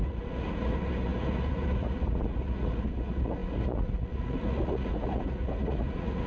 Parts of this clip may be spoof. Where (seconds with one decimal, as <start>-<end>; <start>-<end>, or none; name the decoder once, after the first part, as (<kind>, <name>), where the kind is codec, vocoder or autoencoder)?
0.0-6.3 (vocoder, Vocos)